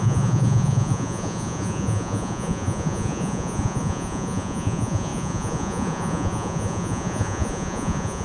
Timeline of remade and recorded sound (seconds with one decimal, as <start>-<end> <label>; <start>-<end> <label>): 0.0-8.2 remade